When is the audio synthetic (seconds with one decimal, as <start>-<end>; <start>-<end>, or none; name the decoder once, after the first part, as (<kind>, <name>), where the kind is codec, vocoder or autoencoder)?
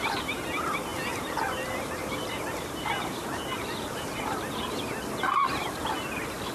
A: 0.9-4.7 (vocoder, BigVGAN v2)